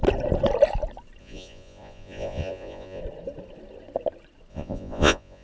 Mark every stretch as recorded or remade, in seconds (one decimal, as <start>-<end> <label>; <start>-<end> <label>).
0.0-1.2 recorded; 1.2-3.0 remade; 3.0-4.5 recorded; 4.5-5.4 remade